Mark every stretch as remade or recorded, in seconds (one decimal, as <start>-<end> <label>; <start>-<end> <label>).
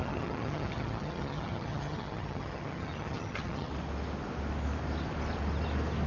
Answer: 0.0-3.7 remade; 3.7-6.1 recorded